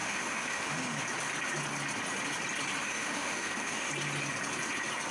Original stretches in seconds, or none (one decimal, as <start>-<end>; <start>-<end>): 1.0-2.8; 3.9-5.1